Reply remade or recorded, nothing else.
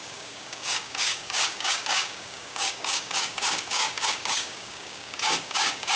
remade